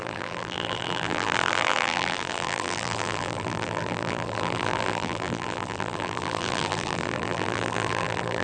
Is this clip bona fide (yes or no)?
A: no